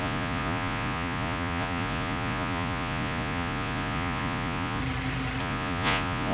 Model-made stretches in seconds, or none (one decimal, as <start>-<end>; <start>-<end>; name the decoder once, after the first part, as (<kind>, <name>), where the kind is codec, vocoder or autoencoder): 0.0-4.8 (vocoder, Vocos); 5.4-6.3